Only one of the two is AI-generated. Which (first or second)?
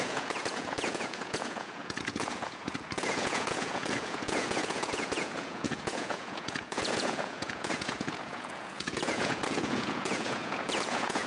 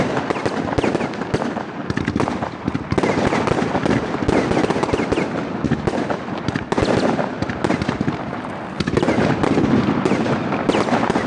first